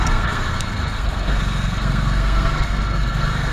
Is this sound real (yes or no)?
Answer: no